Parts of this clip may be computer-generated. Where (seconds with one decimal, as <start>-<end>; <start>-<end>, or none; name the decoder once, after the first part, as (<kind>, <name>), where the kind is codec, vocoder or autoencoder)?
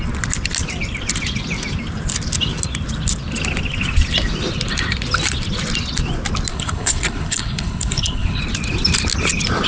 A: 6.5-8.4 (codec, HILCodec)